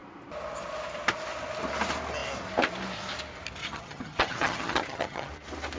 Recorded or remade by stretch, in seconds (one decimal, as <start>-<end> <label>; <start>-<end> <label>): 0.0-3.6 recorded; 3.6-5.3 remade; 5.3-5.8 recorded